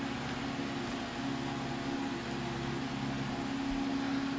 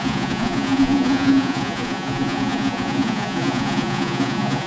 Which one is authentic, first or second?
first